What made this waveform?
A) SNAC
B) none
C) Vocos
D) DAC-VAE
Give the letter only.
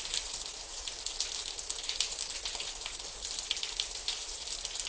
B